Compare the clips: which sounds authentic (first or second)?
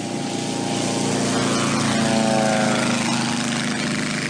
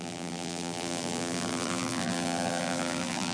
first